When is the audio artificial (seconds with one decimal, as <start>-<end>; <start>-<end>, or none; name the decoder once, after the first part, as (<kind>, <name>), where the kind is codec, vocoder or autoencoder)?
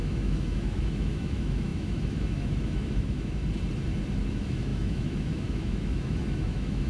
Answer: 0.0-3.4 (autoencoder, DAC-VAE); 4.3-6.9